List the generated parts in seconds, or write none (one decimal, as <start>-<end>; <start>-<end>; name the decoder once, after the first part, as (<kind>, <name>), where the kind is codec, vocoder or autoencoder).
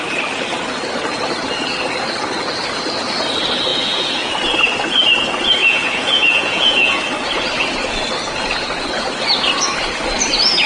3.7-4.3 (vocoder, Vocos); 5.6-7.0